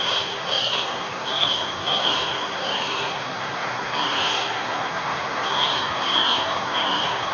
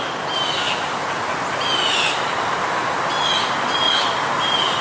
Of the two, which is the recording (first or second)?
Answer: second